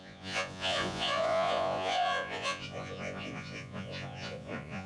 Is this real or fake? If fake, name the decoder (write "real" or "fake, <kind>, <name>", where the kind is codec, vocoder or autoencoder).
fake, vocoder, Vocos